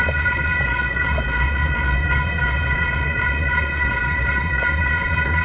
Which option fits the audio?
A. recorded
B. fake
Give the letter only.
B